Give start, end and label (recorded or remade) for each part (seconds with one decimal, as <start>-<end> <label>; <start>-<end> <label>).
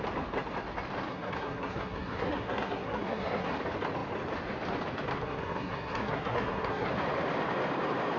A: 0.0-1.1 recorded; 1.1-3.5 remade; 3.5-5.2 recorded; 5.2-6.9 remade; 6.9-8.2 recorded